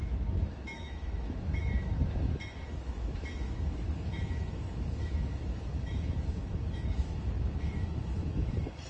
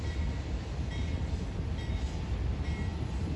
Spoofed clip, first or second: first